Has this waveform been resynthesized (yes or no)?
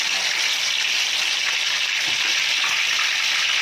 no